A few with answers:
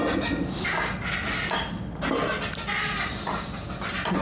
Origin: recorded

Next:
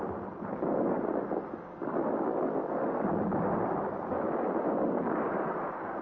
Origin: recorded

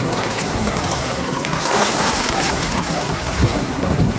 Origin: remade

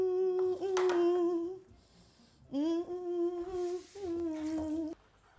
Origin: recorded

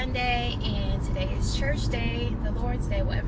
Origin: recorded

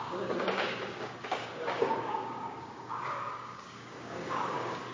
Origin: remade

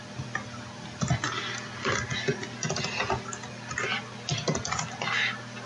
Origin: recorded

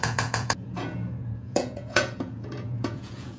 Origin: remade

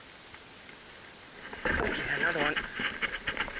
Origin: recorded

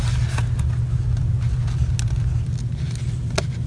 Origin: recorded